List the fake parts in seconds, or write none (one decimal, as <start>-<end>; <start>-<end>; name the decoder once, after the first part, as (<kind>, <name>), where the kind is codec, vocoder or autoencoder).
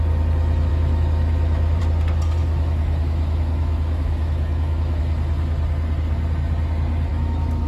0.7-1.8 (autoencoder, DAC-VAE); 2.4-5.0; 7.1-7.7